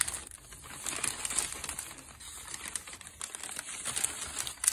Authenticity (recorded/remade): recorded